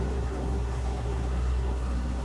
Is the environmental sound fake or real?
fake